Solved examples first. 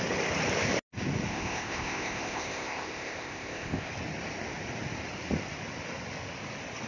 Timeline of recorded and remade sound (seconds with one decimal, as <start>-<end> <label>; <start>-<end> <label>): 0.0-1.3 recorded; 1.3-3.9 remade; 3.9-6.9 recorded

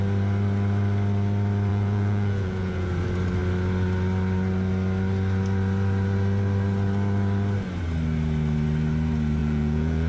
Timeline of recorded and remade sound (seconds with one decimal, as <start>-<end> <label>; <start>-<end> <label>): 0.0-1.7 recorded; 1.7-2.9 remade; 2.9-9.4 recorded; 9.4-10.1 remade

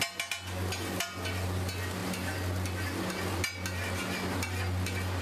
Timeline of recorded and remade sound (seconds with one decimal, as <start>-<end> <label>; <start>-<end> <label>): 0.0-5.2 recorded

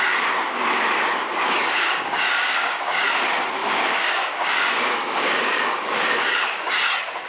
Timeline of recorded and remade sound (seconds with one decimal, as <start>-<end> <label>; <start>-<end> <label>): 0.0-1.6 recorded; 1.6-3.0 remade; 3.0-3.6 recorded; 3.6-6.7 remade; 6.7-7.3 recorded

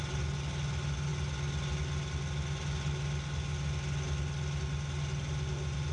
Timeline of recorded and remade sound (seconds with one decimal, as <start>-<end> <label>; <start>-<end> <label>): 0.0-5.9 recorded

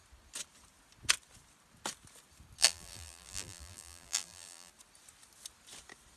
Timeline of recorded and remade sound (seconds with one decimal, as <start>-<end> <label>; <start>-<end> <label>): 0.0-2.6 recorded; 2.6-4.7 remade; 4.7-6.2 recorded

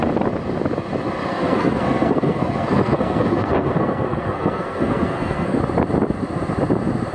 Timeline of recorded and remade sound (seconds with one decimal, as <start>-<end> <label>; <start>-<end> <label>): 0.0-1.3 recorded; 1.3-5.6 remade; 5.6-7.1 recorded

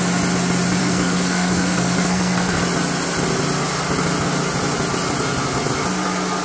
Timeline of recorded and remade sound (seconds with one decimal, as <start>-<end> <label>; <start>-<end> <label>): 0.0-0.8 recorded; 0.8-2.6 remade; 2.6-6.4 recorded